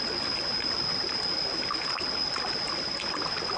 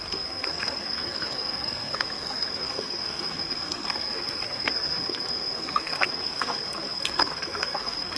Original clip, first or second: first